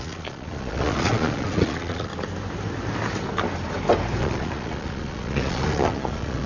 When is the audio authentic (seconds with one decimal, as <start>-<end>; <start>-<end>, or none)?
2.1-4.2